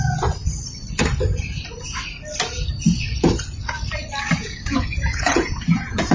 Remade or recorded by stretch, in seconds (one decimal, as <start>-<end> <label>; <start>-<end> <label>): 0.0-4.4 recorded; 4.4-6.1 remade